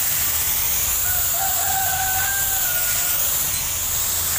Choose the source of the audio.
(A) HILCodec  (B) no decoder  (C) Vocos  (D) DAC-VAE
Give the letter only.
B